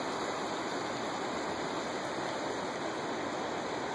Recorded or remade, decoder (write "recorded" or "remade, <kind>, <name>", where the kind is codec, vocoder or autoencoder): recorded